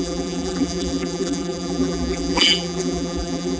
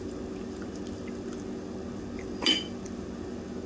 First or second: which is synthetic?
first